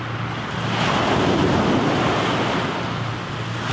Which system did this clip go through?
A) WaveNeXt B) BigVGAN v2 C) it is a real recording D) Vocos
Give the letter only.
C